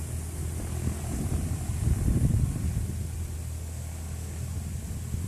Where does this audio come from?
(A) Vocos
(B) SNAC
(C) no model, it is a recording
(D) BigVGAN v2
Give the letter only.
C